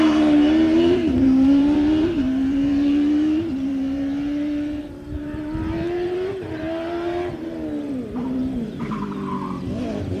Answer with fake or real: fake